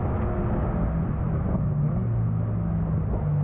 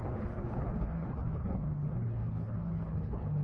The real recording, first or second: first